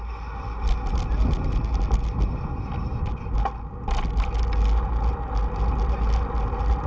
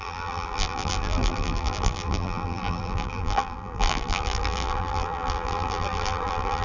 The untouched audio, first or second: first